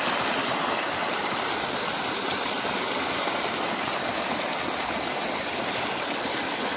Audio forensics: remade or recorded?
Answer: recorded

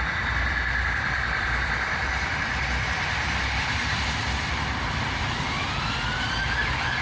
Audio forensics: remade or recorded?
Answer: remade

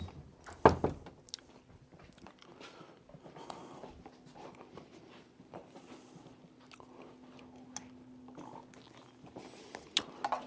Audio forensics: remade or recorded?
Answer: recorded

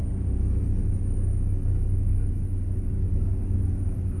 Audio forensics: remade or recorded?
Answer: recorded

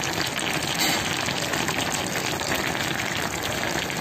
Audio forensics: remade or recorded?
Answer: recorded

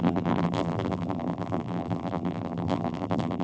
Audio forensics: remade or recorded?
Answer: remade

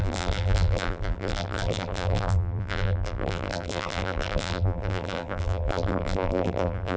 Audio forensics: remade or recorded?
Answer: remade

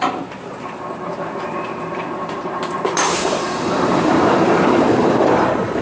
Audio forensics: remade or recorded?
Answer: remade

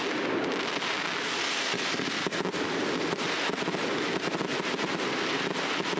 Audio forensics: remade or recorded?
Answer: recorded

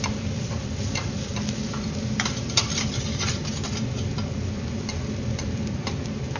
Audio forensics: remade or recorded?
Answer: remade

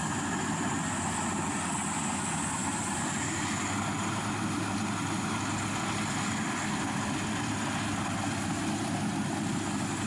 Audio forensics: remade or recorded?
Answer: recorded